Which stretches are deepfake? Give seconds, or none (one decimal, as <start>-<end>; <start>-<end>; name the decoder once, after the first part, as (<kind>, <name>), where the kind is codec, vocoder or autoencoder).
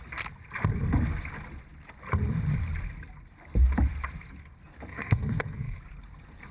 4.9-5.8 (codec, SNAC)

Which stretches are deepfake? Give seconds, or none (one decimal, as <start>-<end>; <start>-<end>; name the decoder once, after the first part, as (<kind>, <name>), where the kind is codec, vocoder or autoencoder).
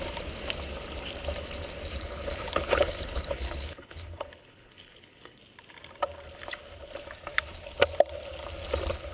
1.9-5.4 (codec, HILCodec)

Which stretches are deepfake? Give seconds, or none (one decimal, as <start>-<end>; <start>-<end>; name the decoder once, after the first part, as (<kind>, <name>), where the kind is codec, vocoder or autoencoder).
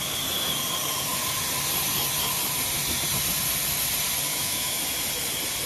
4.3-4.8 (autoencoder, DAC-VAE)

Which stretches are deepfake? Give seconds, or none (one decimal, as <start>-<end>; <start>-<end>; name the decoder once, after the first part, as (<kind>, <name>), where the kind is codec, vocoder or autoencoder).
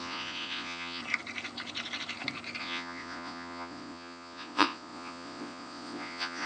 0.0-1.0 (vocoder, Vocos); 2.6-6.5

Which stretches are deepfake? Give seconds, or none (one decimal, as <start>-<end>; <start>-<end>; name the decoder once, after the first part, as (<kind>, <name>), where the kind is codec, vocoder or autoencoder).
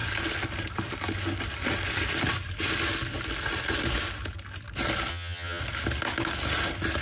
5.1-5.6 (vocoder, HiFi-GAN)